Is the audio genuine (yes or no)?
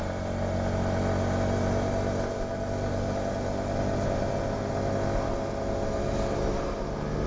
yes